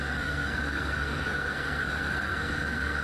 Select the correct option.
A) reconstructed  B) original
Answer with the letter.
A